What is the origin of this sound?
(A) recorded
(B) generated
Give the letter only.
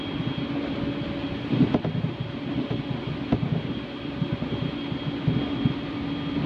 A